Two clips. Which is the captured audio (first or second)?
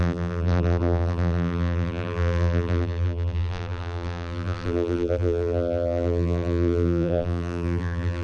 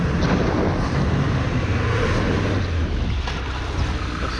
second